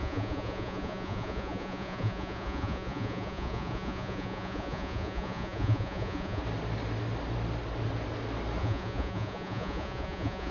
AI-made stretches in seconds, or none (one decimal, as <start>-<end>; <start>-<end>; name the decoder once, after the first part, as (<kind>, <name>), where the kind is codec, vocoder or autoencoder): 0.0-6.4 (vocoder, Vocos); 8.6-10.5